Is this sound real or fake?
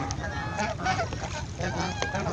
real